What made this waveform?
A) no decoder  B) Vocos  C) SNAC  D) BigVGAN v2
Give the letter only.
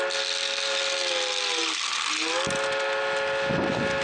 A